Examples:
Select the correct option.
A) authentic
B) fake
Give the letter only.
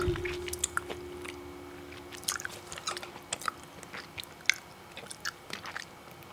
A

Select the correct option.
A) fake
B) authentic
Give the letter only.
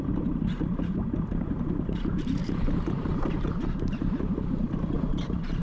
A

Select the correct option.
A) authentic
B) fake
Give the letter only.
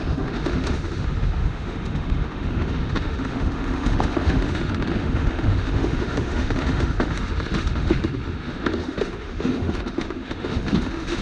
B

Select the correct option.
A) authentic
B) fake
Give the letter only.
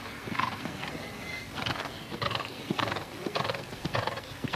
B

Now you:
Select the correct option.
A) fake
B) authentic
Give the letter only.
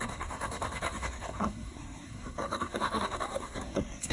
A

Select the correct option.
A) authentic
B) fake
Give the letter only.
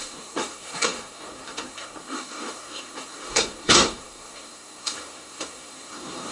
B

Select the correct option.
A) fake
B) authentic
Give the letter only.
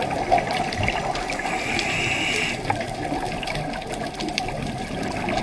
B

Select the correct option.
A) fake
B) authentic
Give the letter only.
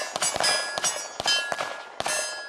B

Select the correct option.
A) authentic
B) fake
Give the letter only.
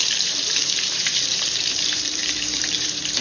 B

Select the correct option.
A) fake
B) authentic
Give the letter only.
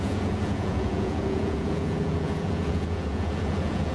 A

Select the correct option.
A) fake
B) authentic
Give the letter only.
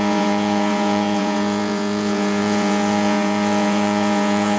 A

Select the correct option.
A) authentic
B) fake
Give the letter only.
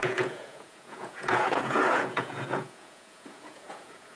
B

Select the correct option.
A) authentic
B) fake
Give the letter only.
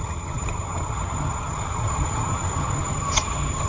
B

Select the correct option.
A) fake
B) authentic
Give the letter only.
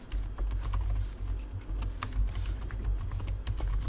B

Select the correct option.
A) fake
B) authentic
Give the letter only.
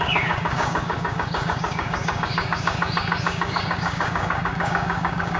A